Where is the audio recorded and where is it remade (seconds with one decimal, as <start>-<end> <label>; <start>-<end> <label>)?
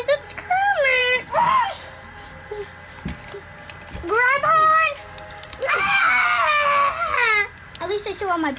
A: 0.0-5.0 recorded; 5.0-6.0 remade; 6.0-8.6 recorded